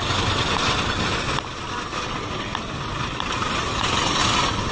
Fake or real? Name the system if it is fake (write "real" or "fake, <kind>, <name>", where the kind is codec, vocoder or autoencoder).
real